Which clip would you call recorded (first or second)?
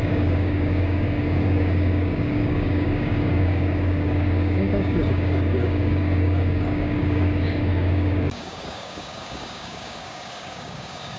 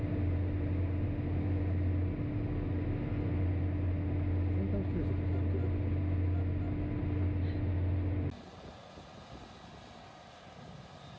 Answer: second